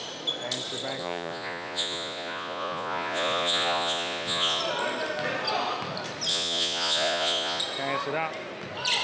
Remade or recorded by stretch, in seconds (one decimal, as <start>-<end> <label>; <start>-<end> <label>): 0.0-1.0 recorded; 1.0-4.6 remade; 4.6-6.3 recorded; 6.3-7.6 remade; 7.6-9.0 recorded